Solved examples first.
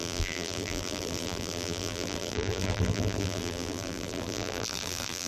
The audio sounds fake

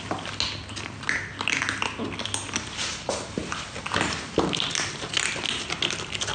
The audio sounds real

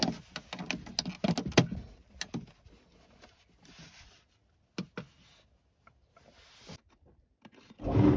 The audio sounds real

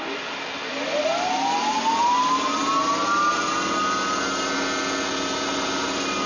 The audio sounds real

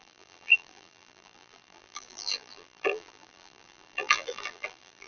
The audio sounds fake